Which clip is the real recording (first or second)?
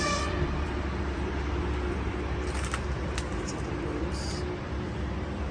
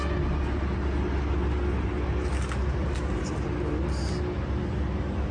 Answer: second